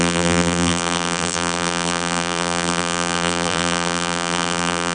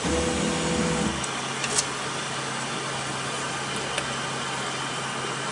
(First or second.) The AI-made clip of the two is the first